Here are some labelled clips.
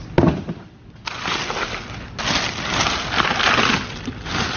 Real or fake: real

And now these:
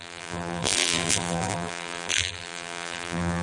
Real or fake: fake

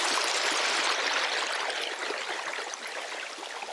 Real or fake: real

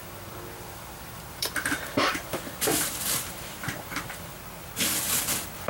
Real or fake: fake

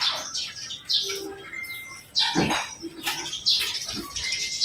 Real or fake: real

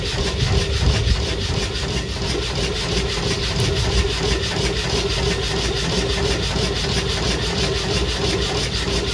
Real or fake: real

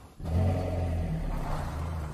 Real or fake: fake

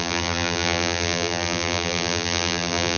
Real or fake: fake